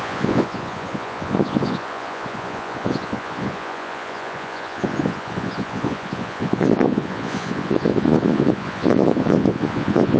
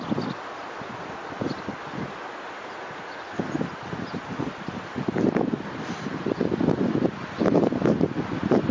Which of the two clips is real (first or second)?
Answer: second